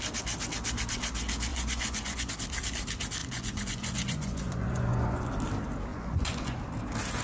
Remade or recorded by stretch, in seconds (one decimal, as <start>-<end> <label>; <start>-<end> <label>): 0.0-1.5 recorded; 1.5-2.3 remade; 2.3-3.2 recorded; 3.2-5.3 remade; 5.3-5.9 recorded; 5.9-6.6 remade; 6.6-7.2 recorded